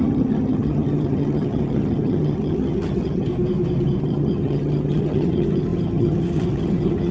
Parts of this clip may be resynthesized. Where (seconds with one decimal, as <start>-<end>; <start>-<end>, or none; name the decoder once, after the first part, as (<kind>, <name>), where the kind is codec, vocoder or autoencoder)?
0.0-3.3 (vocoder, HiFi-GAN); 4.0-7.1